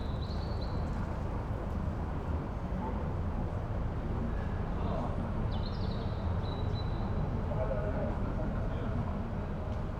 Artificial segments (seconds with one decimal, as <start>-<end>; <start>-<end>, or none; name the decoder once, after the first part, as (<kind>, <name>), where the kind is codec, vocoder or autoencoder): none